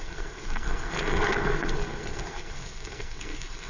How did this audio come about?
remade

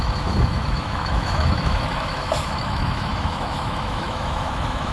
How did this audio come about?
remade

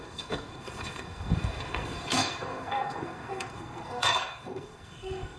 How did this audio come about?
remade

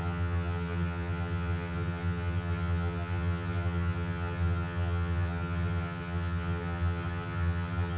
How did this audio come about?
remade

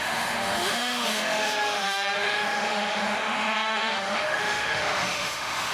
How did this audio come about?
remade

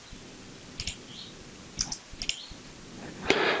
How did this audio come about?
recorded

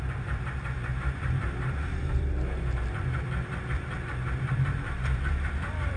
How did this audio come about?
remade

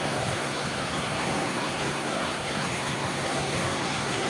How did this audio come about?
remade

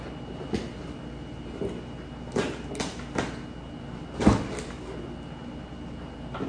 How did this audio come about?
recorded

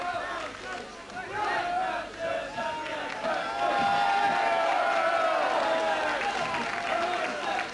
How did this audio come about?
recorded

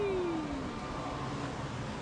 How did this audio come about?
recorded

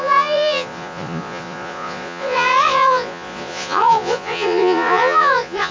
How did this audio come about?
remade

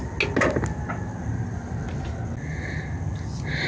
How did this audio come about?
recorded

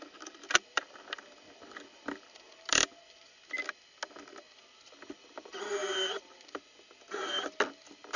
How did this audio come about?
recorded